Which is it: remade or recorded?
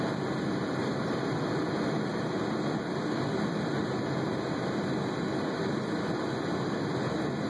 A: recorded